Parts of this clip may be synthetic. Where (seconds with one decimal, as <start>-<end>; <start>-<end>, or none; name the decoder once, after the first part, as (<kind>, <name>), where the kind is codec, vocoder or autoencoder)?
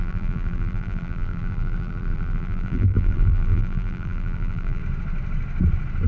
0.0-4.8 (vocoder, BigVGAN v2)